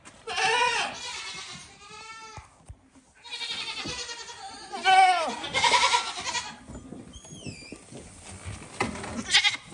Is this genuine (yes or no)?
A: yes